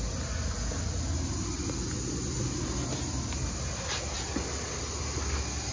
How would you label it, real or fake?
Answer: real